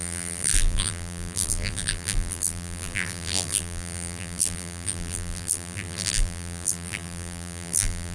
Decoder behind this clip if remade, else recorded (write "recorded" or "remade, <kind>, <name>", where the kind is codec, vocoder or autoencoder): remade, vocoder, BigVGAN v2